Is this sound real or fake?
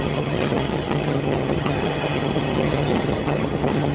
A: fake